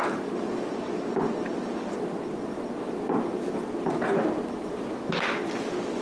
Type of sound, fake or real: real